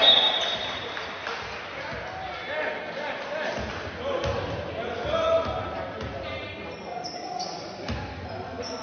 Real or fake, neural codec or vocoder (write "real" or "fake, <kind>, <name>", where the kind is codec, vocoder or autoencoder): real